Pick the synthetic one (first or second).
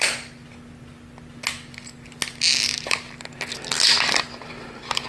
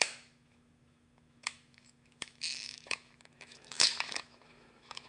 second